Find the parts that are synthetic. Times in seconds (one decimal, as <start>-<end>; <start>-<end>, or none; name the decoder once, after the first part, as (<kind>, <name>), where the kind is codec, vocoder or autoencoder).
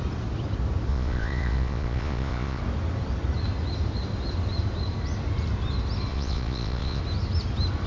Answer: 0.9-2.6 (vocoder, Vocos); 6.1-7.0